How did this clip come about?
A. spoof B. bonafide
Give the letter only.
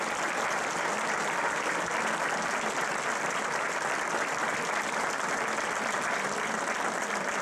B